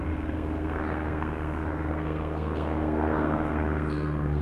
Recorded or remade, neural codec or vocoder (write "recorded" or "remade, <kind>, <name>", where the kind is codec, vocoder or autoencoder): remade, codec, SNAC